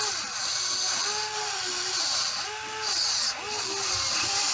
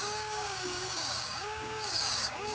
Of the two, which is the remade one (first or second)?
second